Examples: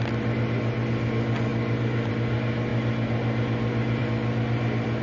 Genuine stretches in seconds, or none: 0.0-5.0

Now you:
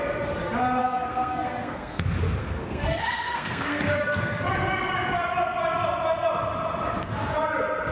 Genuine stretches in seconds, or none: 0.0-0.8; 2.0-2.4; 4.5-7.9

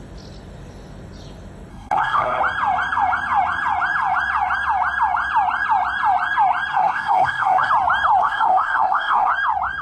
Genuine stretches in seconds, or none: 0.0-1.7; 2.4-6.7; 7.7-8.2; 9.3-9.8

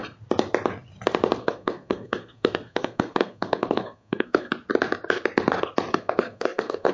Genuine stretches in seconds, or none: 0.0-1.4; 4.5-5.9

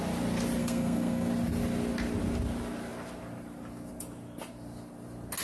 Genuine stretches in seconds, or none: 0.0-0.6; 1.3-5.4

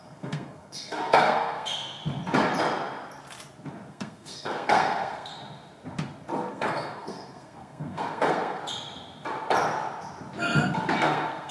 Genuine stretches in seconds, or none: 2.0-3.9; 5.3-6.5; 8.6-11.0

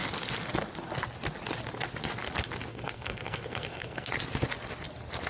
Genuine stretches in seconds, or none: 0.0-2.7; 4.1-5.3